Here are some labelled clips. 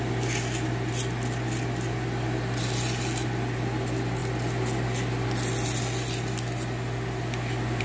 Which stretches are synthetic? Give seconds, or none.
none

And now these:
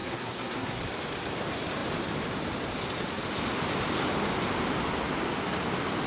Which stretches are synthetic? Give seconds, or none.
0.0-0.8 (codec, SNAC)

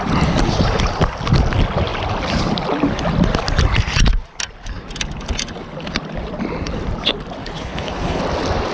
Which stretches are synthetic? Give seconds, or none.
7.4-8.2 (codec, HILCodec)

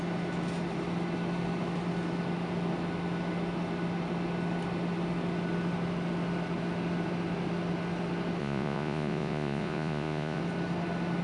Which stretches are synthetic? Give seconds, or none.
8.4-10.4 (vocoder, Vocos)